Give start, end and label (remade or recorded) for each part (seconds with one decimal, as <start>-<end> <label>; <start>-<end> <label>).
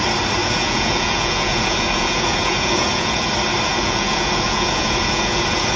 0.0-0.4 recorded; 0.4-3.3 remade; 3.3-3.7 recorded; 3.7-5.8 remade